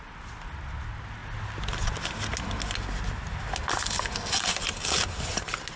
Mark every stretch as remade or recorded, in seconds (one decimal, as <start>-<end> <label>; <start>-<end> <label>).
0.0-5.8 recorded